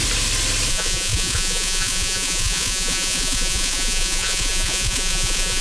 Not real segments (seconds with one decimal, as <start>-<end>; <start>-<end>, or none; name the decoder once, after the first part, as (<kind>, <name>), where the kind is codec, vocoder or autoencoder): 0.7-5.6 (vocoder, Vocos)